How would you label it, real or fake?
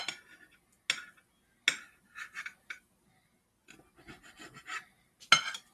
real